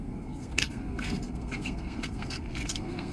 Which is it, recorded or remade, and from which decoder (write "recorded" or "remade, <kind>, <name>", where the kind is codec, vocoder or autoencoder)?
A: remade, codec, SNAC